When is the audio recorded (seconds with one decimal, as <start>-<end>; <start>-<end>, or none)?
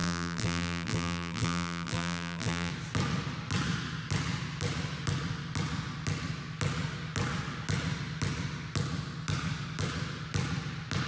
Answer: 2.7-11.1